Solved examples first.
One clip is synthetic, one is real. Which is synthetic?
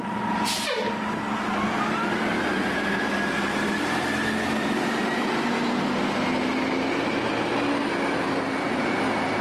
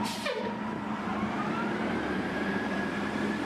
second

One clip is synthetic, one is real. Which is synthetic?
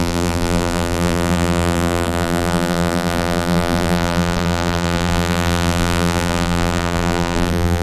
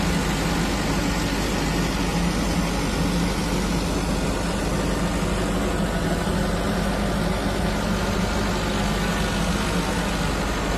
first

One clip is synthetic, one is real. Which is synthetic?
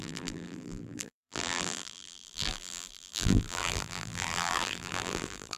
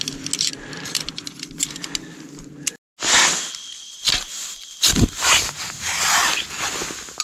first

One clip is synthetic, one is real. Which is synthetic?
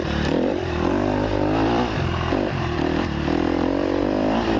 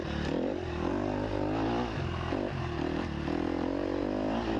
first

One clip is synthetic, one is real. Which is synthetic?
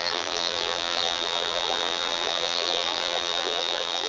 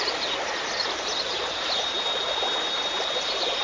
first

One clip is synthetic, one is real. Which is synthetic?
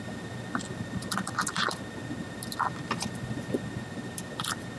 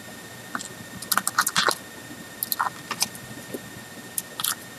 first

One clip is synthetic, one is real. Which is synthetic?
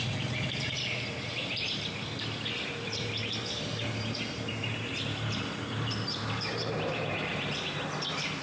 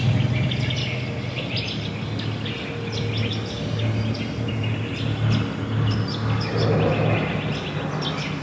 first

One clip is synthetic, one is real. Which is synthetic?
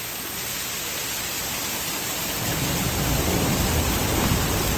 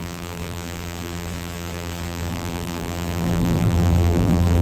second